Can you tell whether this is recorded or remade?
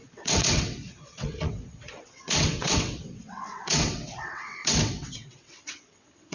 remade